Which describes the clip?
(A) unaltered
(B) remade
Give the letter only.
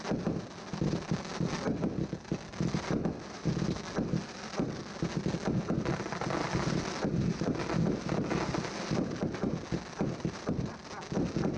A